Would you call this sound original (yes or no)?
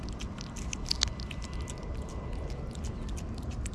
yes